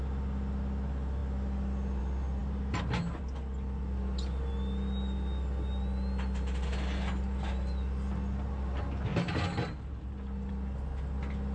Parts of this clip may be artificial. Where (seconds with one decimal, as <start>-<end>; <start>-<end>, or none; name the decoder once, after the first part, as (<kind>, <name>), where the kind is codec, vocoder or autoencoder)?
none